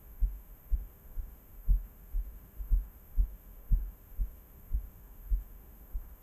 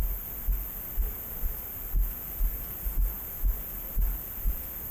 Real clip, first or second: second